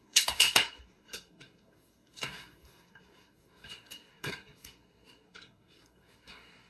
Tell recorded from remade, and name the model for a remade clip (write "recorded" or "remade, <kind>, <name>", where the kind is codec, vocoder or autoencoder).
remade, codec, SNAC